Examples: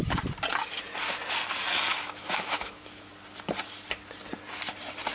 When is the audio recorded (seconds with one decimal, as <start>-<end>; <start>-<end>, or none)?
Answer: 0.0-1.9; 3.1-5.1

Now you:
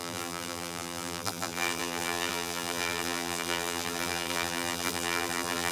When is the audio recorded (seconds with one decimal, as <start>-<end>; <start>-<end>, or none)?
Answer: none

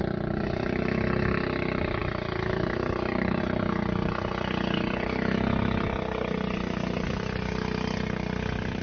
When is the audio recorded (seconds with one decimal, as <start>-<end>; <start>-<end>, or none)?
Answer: 0.0-8.8